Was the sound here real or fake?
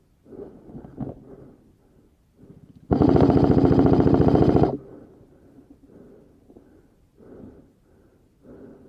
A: real